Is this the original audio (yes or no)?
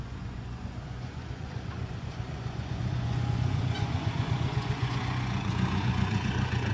no